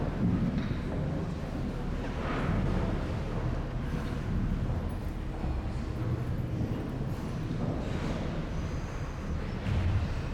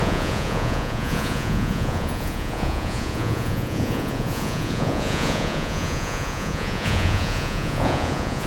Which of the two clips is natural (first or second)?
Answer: first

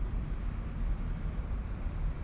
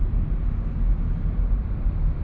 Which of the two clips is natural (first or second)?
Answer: second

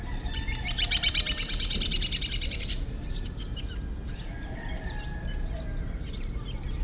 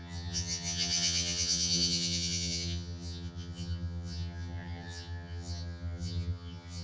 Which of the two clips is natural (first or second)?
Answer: first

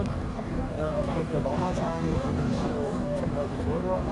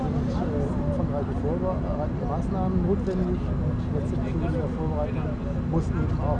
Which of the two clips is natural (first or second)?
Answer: second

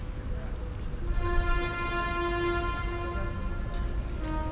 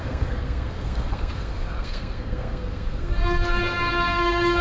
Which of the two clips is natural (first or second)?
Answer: first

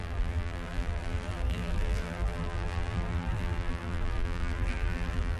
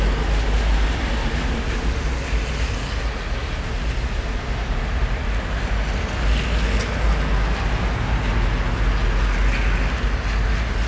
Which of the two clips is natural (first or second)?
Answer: second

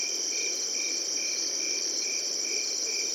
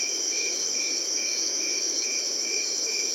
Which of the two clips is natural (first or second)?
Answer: first